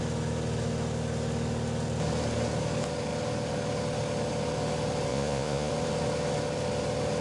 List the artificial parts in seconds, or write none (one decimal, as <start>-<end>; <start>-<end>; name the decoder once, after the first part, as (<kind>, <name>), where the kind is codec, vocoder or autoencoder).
5.1-5.7 (vocoder, Vocos)